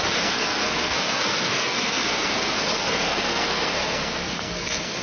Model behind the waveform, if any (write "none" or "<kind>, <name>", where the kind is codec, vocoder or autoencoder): codec, SNAC